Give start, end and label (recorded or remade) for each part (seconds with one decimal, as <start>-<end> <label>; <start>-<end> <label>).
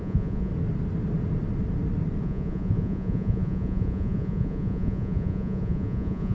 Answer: 0.0-0.5 remade; 0.5-2.2 recorded; 2.2-6.3 remade